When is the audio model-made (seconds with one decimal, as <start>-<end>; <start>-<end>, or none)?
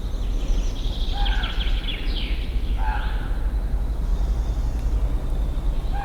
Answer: 1.9-2.8